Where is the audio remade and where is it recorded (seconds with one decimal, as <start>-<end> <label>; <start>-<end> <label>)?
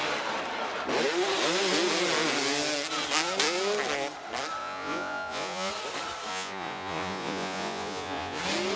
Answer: 0.0-4.6 recorded; 4.6-5.7 remade; 5.7-6.3 recorded; 6.3-8.4 remade; 8.4-8.8 recorded